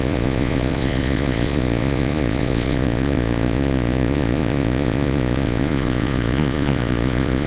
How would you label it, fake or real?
fake